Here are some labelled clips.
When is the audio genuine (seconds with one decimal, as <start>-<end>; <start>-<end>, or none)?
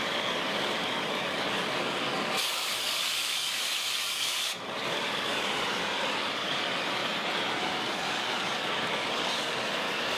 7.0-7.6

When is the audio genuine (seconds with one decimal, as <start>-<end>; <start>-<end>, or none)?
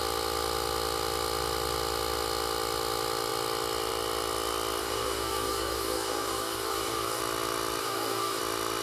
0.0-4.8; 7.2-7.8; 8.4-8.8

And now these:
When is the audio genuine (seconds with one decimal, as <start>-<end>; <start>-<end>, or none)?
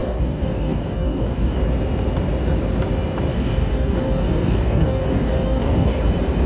1.6-3.3; 6.0-6.5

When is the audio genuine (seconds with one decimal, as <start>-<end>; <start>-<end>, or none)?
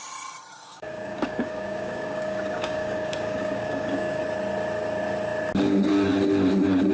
0.0-0.7; 4.2-6.9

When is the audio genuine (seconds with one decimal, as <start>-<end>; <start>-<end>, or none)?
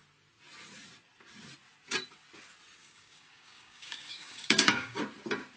0.0-2.8; 5.0-5.6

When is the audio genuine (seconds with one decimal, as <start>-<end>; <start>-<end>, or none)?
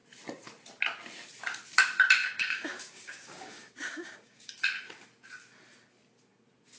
0.0-2.2; 4.5-6.8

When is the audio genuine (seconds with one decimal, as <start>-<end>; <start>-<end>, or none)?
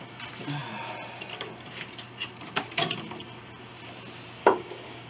0.0-4.4